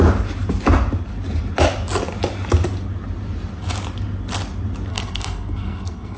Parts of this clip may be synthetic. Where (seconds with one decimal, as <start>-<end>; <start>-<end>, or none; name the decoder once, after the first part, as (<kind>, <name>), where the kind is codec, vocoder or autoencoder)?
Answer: 4.9-6.2 (codec, SNAC)